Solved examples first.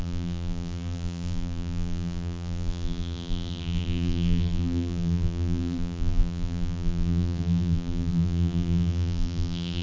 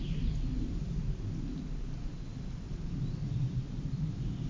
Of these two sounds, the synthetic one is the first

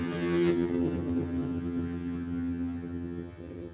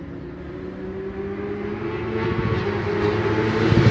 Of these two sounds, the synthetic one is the first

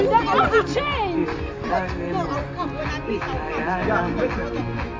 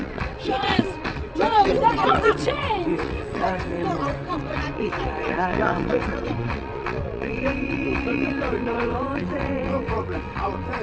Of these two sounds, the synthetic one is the second